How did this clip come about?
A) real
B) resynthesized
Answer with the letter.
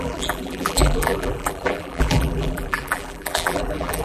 B